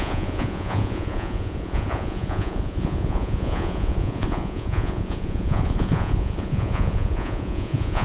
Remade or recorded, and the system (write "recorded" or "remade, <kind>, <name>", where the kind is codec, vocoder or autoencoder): remade, vocoder, Vocos